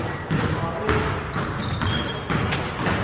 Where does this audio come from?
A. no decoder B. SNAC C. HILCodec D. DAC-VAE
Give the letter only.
A